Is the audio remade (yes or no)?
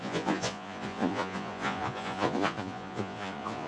yes